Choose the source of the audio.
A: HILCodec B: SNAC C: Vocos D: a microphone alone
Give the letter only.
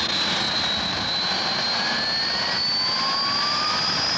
D